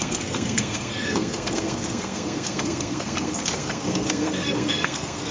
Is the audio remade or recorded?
remade